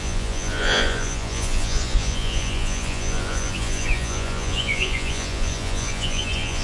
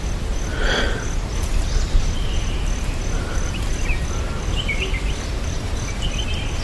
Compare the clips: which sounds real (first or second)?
second